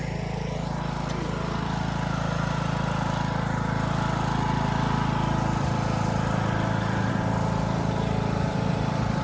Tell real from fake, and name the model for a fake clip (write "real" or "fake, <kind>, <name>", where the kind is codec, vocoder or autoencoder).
real